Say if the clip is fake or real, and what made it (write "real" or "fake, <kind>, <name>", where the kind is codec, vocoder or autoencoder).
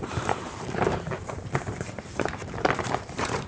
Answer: fake, vocoder, BigVGAN v2